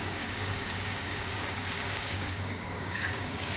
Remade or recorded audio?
remade